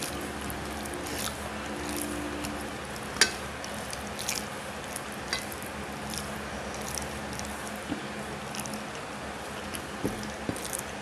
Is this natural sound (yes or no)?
yes